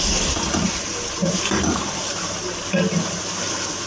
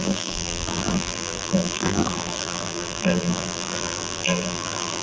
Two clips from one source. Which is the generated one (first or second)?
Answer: second